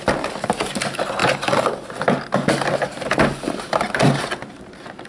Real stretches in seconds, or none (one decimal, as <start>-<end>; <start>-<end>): 0.0-5.1

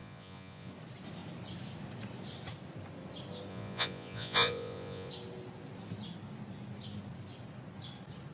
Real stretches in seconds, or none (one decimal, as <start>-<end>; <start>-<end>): 0.7-3.5; 5.1-8.3

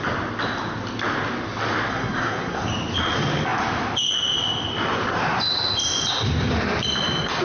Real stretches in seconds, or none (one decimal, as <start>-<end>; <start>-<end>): 0.0-1.9; 2.7-7.4

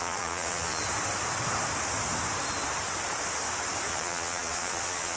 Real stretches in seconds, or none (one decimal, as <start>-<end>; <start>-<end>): 0.8-3.9

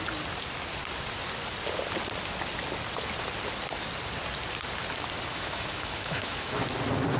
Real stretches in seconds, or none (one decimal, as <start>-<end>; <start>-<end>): 0.0-5.3; 6.6-7.2